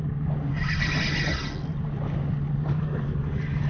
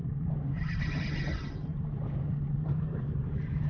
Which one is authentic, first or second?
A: first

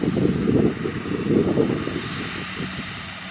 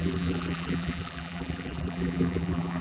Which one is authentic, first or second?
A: first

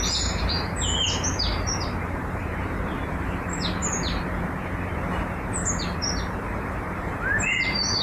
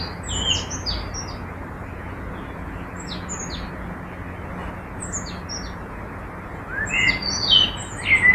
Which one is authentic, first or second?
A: second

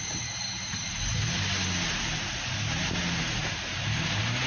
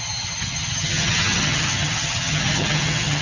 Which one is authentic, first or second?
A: first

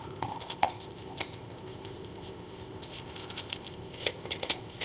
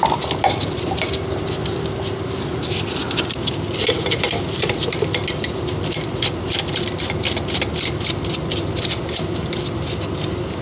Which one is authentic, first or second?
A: second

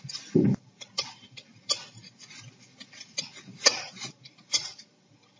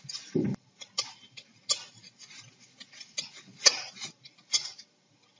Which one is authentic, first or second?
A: second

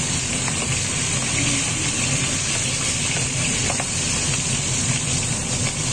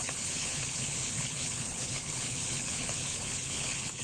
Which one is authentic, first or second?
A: first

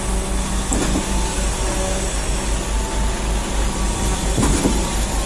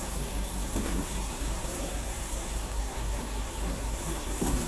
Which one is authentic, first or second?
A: first